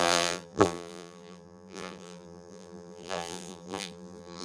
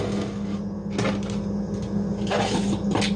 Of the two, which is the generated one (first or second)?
first